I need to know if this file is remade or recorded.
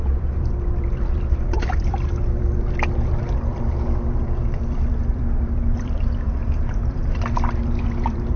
remade